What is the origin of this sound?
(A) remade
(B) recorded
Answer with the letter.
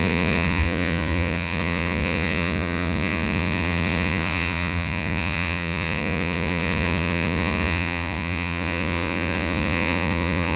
A